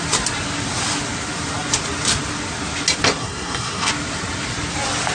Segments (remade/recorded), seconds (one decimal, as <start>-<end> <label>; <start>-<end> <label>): 0.0-3.2 recorded; 3.2-3.9 remade; 3.9-5.1 recorded